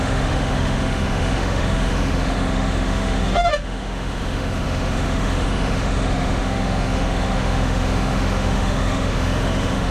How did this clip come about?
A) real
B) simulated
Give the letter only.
B